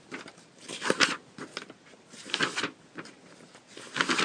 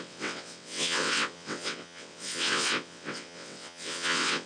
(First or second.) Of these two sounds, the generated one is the second